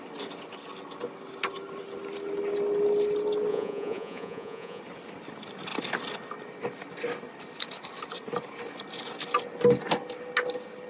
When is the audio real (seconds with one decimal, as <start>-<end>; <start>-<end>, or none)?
0.0-3.5; 4.8-10.9